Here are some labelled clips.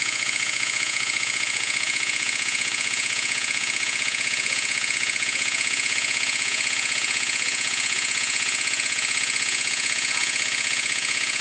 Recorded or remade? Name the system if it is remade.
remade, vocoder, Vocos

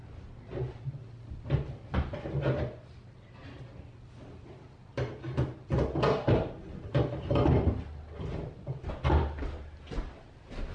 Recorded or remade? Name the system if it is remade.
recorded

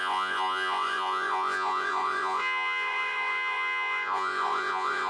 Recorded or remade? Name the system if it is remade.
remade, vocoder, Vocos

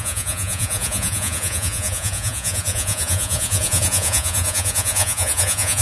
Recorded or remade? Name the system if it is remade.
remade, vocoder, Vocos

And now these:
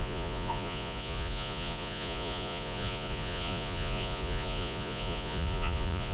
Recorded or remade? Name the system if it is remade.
remade, vocoder, Vocos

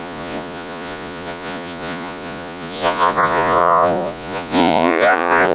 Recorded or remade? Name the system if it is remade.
remade, vocoder, Vocos